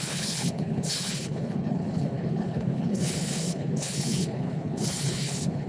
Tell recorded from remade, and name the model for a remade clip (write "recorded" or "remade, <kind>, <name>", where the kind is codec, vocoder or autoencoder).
remade, codec, HILCodec